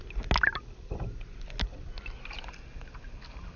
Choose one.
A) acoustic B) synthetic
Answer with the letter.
A